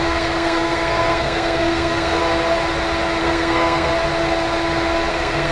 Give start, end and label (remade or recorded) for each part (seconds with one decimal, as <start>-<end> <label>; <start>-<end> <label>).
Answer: 0.0-2.2 remade; 2.2-3.2 recorded; 3.2-3.9 remade; 3.9-5.1 recorded; 5.1-5.5 remade